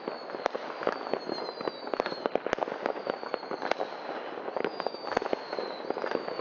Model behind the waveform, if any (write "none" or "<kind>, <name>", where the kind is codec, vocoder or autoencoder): none